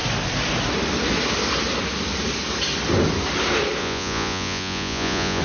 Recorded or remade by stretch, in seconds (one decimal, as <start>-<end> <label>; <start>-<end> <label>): 0.0-3.8 recorded; 3.8-5.4 remade